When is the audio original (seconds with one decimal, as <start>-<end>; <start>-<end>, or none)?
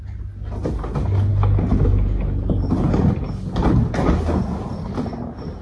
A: 0.0-5.6